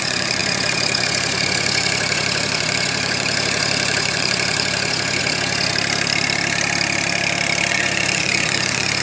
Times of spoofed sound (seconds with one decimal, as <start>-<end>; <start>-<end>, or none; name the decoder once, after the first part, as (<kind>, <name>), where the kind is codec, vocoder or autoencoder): 0.0-5.7 (vocoder, Vocos); 7.7-9.0